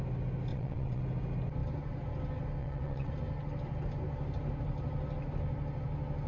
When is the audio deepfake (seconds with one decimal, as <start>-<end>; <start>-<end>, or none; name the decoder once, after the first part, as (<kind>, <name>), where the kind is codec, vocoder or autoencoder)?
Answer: 0.5-1.0 (vocoder, WaveNeXt); 2.6-3.1